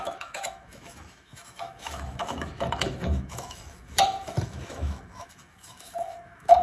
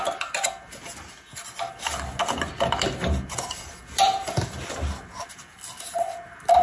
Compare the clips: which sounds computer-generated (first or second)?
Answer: first